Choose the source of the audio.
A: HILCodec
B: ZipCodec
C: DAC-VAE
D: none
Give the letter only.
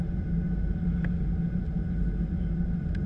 D